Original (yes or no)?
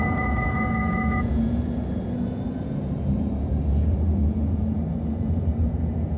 no